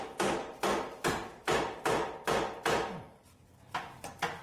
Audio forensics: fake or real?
real